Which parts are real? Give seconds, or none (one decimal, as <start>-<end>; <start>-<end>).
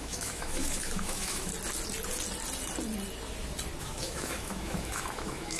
1.5-3.8